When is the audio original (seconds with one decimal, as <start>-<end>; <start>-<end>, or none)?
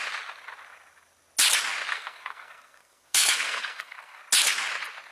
0.0-1.9; 4.2-5.1